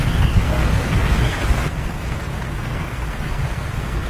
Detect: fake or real fake